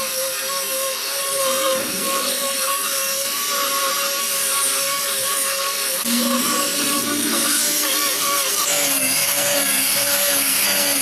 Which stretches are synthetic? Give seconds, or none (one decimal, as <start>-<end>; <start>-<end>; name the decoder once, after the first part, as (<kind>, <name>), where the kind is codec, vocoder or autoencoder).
0.0-3.4 (codec, SNAC); 4.2-11.0